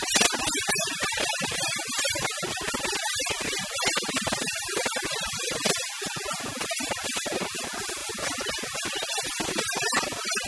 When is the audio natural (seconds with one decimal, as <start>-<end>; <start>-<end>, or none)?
0.0-8.0

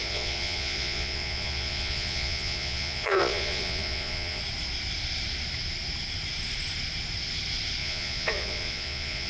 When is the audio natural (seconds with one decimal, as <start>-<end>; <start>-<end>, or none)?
4.4-7.8

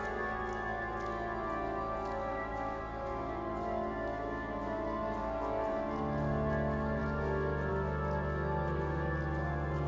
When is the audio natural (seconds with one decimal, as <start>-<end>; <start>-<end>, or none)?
0.0-2.3; 2.8-9.9

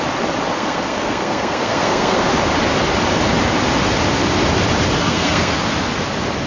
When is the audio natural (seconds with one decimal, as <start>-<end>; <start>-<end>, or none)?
0.0-0.5; 2.3-5.0; 5.6-6.5

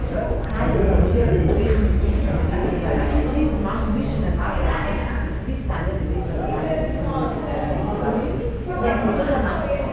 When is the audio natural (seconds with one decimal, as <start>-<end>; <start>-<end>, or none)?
2.6-4.3; 5.0-8.4